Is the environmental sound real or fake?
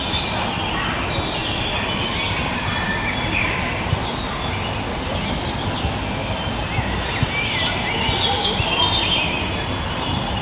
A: real